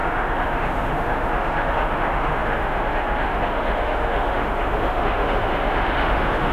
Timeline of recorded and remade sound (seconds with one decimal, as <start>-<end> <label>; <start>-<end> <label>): 0.0-6.5 remade